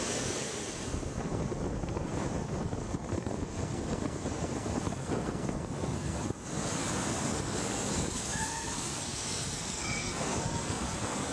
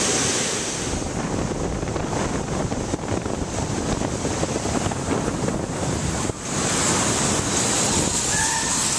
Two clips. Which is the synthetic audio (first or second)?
first